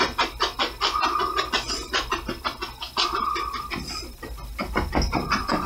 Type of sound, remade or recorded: recorded